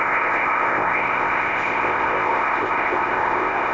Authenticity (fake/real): fake